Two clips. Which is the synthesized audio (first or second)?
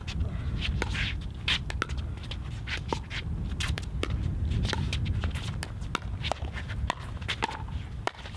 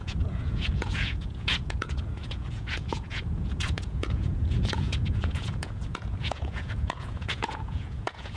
second